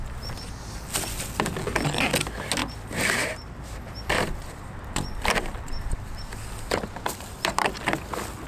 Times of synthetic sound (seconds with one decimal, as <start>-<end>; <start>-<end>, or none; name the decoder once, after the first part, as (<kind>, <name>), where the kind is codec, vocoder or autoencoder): 2.6-3.9 (vocoder, BigVGAN v2); 5.1-6.3